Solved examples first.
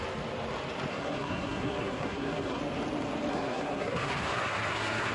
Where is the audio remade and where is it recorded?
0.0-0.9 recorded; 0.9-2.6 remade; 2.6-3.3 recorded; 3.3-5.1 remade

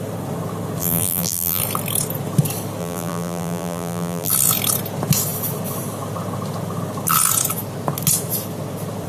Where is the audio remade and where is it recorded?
0.0-0.8 recorded; 0.8-1.6 remade; 1.6-2.8 recorded; 2.8-4.3 remade; 4.3-9.1 recorded

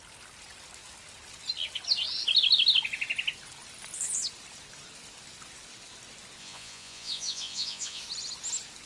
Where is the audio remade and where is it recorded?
0.0-6.4 recorded; 6.4-8.0 remade; 8.0-8.9 recorded